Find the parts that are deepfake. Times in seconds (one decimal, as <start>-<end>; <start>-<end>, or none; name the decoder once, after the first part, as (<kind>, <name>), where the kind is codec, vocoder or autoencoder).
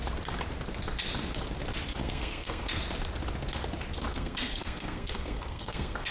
2.0-2.8 (codec, SNAC); 4.1-6.1